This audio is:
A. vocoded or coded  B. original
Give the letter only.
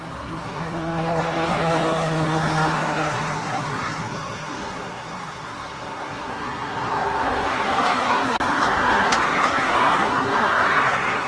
A